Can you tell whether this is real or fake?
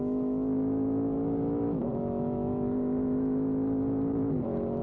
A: fake